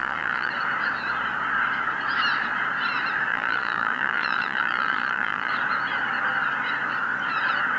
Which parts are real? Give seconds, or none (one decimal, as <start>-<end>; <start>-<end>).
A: 0.5-3.3; 5.5-7.8